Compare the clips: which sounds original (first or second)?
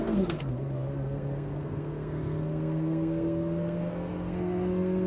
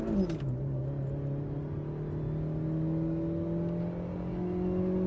second